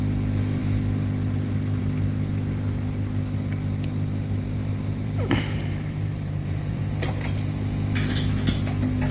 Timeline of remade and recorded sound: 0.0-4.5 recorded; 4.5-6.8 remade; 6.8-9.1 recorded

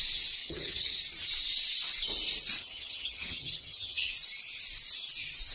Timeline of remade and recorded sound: 0.0-0.4 recorded; 0.4-1.0 remade; 1.0-2.6 recorded; 2.6-4.1 remade; 4.1-5.5 recorded

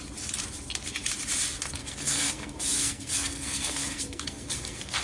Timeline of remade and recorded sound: 0.0-1.8 recorded; 1.8-5.0 remade

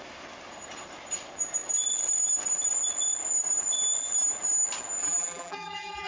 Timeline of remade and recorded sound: 0.0-5.0 recorded; 5.0-6.1 remade

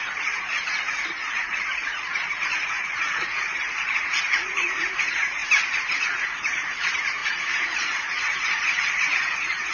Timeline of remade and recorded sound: 0.0-5.4 remade; 5.4-6.0 recorded; 6.0-9.7 remade

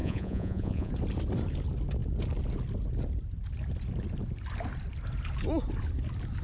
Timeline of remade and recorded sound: 0.0-0.9 remade; 0.9-6.4 recorded

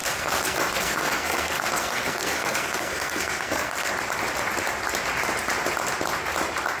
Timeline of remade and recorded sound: 0.0-3.9 remade; 3.9-6.8 recorded

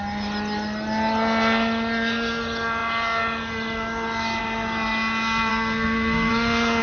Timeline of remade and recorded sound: 0.0-5.5 recorded; 5.5-6.3 remade; 6.3-6.8 recorded